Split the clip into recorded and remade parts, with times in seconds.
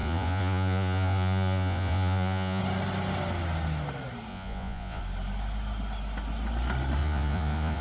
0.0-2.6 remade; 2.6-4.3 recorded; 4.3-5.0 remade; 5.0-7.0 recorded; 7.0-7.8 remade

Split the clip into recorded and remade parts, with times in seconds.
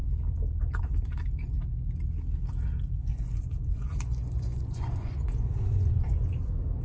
0.0-3.1 recorded; 3.1-6.3 remade; 6.3-6.8 recorded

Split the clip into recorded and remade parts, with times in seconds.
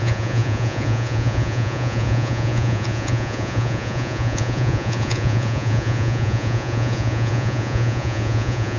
0.0-8.8 remade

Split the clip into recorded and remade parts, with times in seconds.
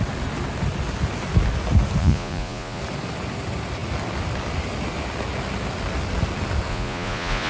0.0-2.0 recorded; 2.0-2.8 remade; 2.8-6.7 recorded; 6.7-7.5 remade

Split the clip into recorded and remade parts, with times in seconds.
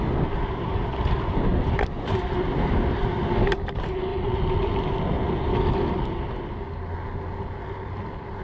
0.0-8.4 recorded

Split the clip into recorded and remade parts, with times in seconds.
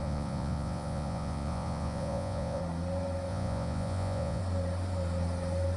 0.0-2.6 remade; 2.6-3.3 recorded; 3.3-4.4 remade; 4.4-5.8 recorded